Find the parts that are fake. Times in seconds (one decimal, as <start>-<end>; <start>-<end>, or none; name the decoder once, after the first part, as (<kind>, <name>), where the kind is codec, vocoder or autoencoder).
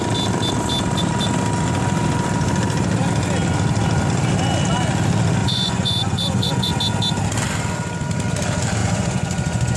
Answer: 5.4-6.7 (vocoder, Vocos); 8.8-9.8